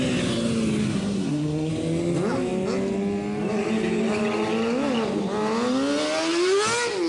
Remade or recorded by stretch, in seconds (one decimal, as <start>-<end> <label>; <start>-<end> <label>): 0.0-0.8 recorded; 0.8-1.7 remade; 1.7-7.1 recorded